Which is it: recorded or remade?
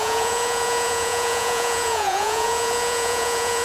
remade